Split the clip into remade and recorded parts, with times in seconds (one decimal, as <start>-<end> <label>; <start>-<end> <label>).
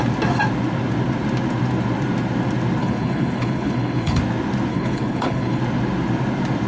0.0-2.8 recorded; 2.8-4.2 remade; 4.2-4.7 recorded; 4.7-5.6 remade; 5.6-6.7 recorded